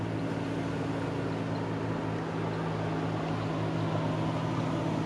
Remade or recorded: recorded